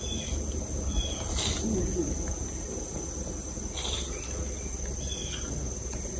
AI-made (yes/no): no